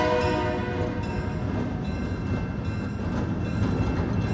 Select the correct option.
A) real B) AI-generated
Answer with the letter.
A